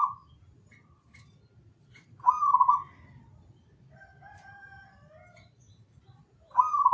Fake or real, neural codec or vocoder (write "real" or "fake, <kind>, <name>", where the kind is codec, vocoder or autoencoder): real